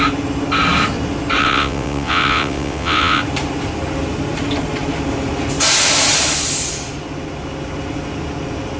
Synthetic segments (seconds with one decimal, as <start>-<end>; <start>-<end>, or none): 1.4-3.2